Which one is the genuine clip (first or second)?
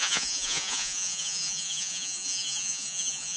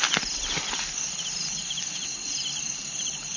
second